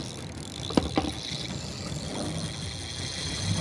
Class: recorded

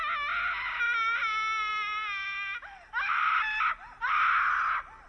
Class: recorded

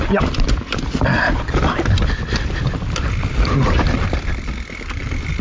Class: recorded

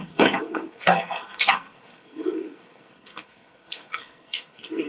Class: remade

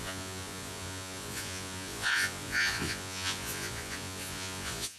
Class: remade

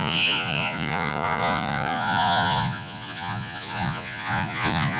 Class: remade